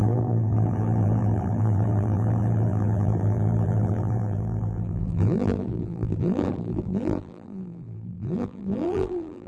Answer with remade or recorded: remade